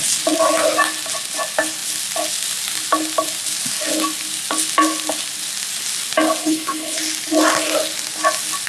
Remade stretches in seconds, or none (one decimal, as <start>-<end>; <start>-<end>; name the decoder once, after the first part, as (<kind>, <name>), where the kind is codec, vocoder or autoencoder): 6.4-7.0 (codec, HILCodec)